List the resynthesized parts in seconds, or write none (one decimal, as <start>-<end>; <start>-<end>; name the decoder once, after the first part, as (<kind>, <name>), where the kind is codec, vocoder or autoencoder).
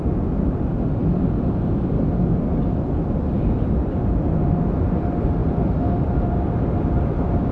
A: none